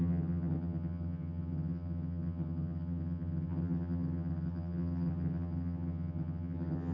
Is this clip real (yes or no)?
no